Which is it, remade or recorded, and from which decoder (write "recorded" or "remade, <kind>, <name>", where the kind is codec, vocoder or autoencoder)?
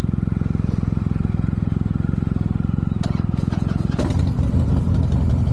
recorded